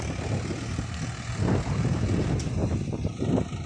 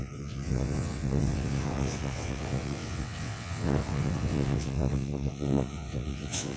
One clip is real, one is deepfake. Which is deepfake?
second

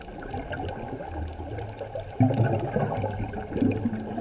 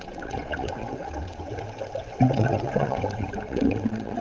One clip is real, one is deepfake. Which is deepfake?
second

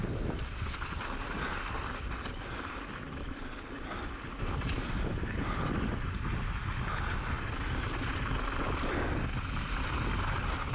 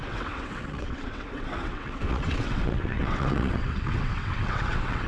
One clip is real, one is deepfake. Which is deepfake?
second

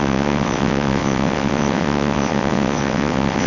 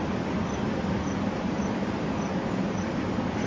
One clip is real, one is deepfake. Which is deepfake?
first